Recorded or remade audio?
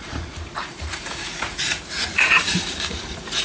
remade